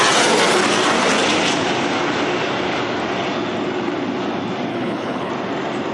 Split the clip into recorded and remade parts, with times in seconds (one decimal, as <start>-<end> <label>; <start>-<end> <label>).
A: 0.0-4.7 recorded; 4.7-5.3 remade; 5.3-5.9 recorded